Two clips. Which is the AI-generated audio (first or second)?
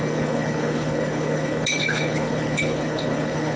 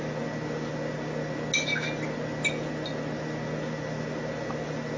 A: first